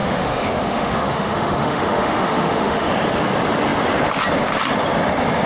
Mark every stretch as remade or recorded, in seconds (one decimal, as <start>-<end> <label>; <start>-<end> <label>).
0.0-2.9 remade; 2.9-5.5 recorded